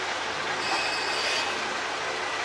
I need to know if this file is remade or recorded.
recorded